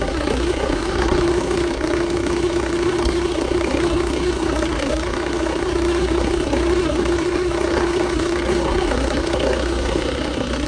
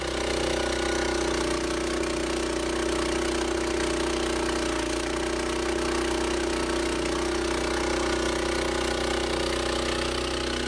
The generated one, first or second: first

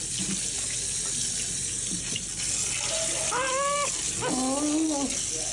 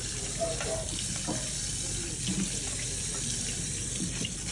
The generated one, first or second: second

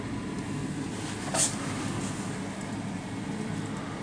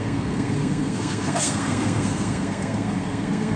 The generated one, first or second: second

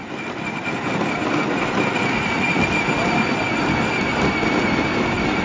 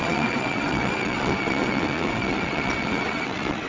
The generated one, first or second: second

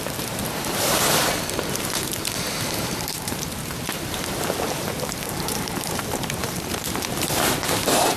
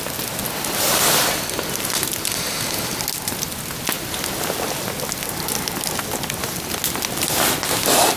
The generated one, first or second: first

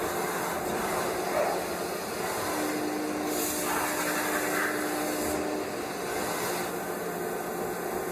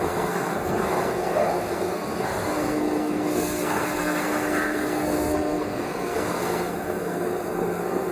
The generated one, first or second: second